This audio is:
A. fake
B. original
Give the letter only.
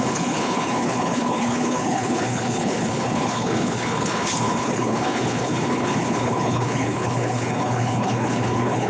A